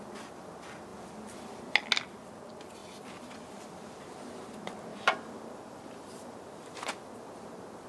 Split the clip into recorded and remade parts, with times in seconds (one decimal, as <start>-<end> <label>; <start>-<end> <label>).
0.0-4.9 recorded; 4.9-6.6 remade; 6.6-7.9 recorded